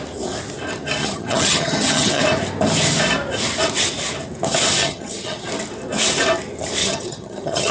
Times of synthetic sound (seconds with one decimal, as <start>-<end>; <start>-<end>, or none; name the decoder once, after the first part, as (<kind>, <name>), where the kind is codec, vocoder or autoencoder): 1.0-2.2 (vocoder, HiFi-GAN); 4.8-5.5; 6.8-7.7